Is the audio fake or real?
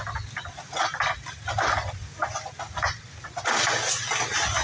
real